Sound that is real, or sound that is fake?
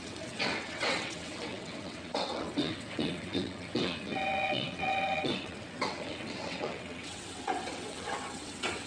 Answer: fake